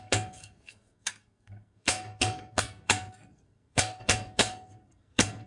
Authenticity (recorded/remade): remade